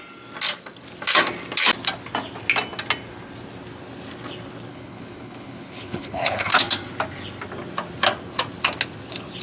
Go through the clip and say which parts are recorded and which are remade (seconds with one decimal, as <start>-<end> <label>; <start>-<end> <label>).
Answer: 0.0-4.7 recorded; 4.7-6.5 remade; 6.5-9.4 recorded